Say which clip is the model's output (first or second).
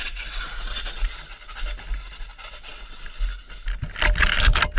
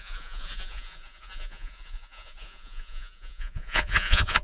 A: second